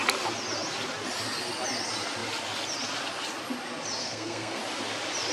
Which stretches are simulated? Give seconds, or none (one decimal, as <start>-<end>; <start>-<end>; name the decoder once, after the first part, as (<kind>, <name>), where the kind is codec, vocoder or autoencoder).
4.0-4.6 (codec, SNAC)